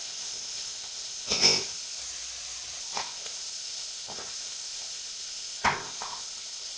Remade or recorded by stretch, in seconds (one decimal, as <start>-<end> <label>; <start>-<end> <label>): 0.0-2.0 remade; 2.0-2.8 recorded; 2.8-6.8 remade